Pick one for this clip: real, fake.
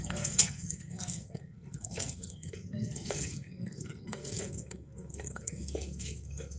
fake